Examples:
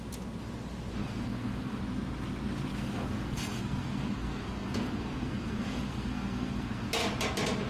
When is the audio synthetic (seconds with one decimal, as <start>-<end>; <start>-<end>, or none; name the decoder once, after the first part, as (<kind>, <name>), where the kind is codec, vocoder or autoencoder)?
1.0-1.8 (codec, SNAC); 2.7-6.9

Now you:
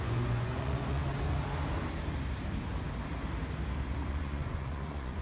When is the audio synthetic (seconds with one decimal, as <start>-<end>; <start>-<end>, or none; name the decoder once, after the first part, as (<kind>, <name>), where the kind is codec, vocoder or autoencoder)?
0.0-1.0 (vocoder, Vocos); 4.1-5.2

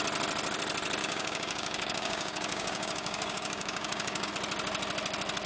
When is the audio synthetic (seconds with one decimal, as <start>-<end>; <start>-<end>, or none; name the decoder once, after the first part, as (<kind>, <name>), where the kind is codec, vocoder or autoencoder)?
1.0-4.3 (codec, DAC)

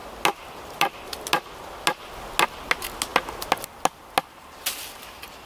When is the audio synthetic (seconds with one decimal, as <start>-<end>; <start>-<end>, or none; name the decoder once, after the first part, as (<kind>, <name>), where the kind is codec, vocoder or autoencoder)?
none